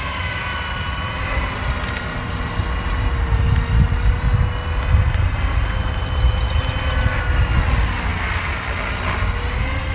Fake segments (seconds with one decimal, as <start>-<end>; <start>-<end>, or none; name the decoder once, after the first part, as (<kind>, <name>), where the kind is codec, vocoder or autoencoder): none